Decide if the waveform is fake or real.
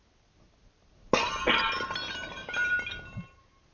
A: real